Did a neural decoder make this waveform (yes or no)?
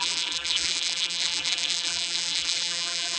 yes